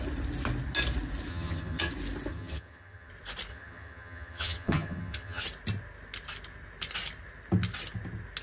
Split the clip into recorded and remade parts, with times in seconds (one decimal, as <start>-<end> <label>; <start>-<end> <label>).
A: 0.0-1.3 recorded; 1.3-1.9 remade; 1.9-2.3 recorded; 2.3-3.1 remade; 3.1-3.5 recorded; 3.5-5.4 remade; 5.4-8.4 recorded